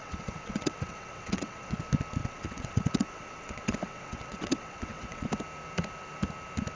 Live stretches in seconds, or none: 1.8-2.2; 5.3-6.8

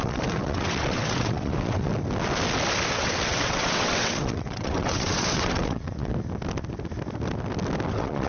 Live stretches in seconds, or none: 1.9-2.9; 6.1-7.9

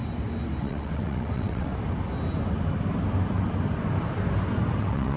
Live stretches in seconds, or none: 0.0-0.6; 1.7-4.8

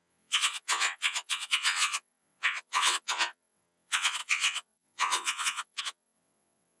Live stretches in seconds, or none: none

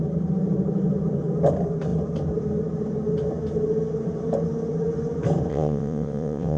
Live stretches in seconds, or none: 0.0-5.5

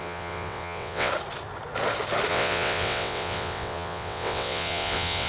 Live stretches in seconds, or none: 1.1-2.3

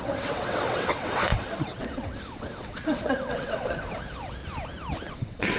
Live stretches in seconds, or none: 4.4-5.1

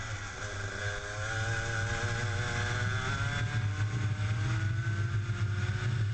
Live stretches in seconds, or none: 0.0-6.1